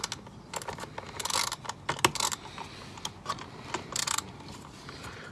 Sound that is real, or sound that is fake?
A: real